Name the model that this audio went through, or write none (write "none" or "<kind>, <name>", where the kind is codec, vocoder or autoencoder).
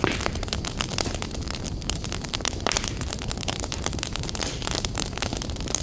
vocoder, BigVGAN v2